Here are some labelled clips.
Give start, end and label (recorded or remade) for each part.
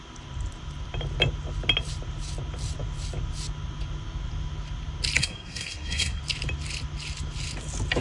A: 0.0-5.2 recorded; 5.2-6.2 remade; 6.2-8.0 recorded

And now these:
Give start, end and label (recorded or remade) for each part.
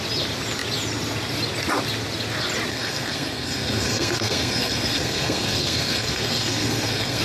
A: 0.0-2.7 recorded; 2.7-7.2 remade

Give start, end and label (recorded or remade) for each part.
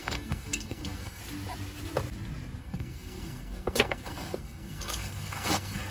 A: 0.0-1.2 remade; 1.2-2.6 recorded; 2.6-5.9 remade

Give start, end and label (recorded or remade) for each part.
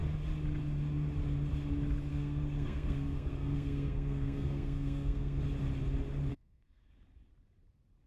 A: 0.0-2.1 recorded; 2.1-5.4 remade; 5.4-6.3 recorded; 6.3-6.9 remade; 6.9-8.1 recorded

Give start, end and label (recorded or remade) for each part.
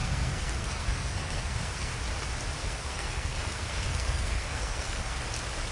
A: 0.0-1.9 remade; 1.9-2.6 recorded; 2.6-5.2 remade; 5.2-5.7 recorded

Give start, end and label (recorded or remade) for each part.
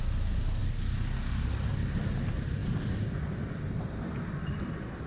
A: 0.0-5.1 recorded